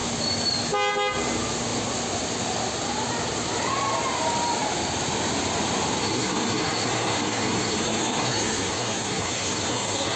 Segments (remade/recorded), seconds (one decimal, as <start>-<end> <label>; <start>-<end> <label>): 0.0-6.0 recorded; 6.0-10.2 remade